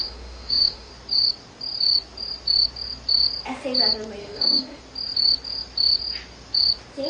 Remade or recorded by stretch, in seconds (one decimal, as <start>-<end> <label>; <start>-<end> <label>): 0.0-0.9 remade; 0.9-4.2 recorded; 4.2-4.8 remade; 4.8-7.1 recorded